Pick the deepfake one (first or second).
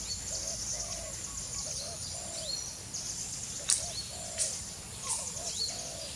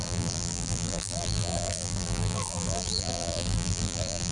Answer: second